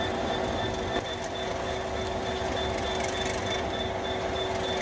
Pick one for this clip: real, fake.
real